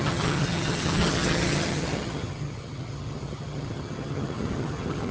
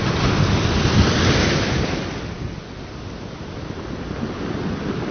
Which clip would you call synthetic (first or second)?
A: first